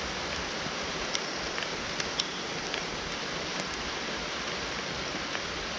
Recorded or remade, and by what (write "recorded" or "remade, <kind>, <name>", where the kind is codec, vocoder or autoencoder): recorded